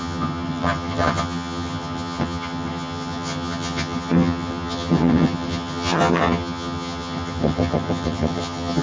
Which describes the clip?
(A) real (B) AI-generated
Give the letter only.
B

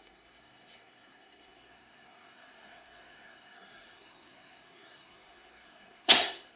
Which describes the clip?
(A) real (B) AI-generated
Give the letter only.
B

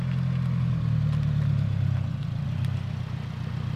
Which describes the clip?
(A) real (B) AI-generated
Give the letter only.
A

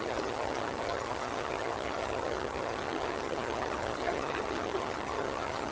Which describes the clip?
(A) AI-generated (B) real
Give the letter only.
A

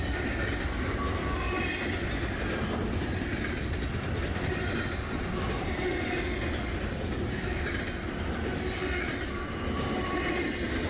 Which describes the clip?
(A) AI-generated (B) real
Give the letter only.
B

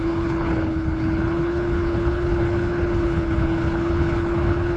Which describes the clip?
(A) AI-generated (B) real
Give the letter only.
A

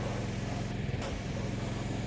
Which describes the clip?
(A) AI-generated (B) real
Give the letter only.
B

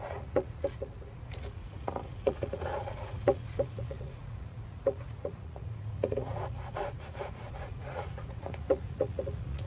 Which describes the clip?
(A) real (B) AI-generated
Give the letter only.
B